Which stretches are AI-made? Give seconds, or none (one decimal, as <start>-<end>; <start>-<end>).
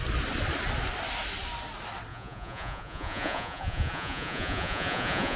2.1-5.4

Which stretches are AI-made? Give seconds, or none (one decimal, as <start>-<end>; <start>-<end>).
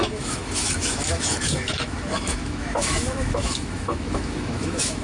0.0-5.0